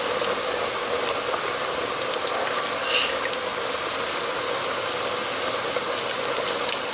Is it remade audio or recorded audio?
recorded